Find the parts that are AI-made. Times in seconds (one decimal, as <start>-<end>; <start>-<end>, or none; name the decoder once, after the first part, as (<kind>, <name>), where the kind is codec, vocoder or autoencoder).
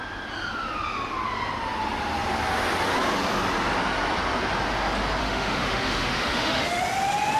5.2-6.8 (autoencoder, DAC-VAE)